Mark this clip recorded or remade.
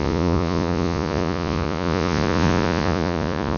remade